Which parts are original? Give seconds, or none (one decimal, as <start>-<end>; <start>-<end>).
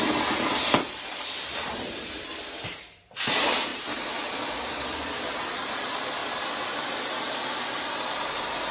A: none